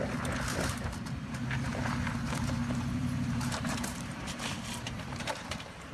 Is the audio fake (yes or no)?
yes